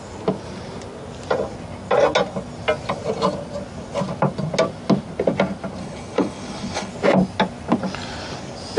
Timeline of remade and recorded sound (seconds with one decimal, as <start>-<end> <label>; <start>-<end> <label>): 0.0-5.8 recorded; 5.8-6.9 remade; 6.9-8.8 recorded